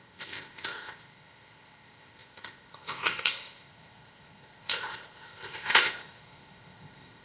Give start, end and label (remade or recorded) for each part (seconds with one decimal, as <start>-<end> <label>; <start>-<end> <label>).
0.0-7.2 remade